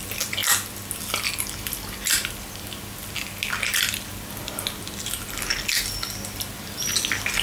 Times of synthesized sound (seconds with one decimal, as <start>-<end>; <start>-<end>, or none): none